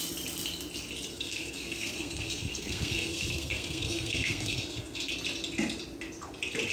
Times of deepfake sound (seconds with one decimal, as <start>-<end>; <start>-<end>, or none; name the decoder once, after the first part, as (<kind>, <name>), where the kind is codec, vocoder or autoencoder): 1.1-5.1 (codec, SNAC)